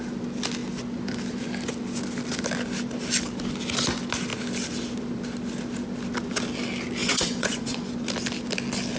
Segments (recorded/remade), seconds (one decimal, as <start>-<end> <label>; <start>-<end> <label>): 0.0-7.0 recorded; 7.0-7.9 remade; 7.9-9.0 recorded